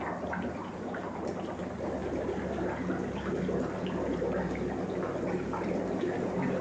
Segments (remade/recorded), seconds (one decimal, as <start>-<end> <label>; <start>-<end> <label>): 0.0-6.6 recorded